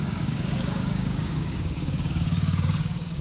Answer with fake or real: fake